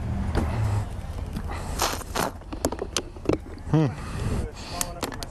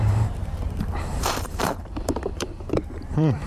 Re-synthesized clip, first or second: second